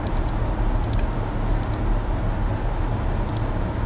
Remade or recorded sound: recorded